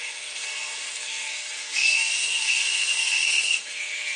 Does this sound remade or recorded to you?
remade